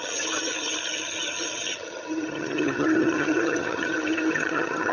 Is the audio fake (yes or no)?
yes